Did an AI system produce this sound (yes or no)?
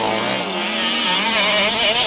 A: no